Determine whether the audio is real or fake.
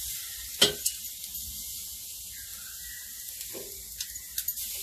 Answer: real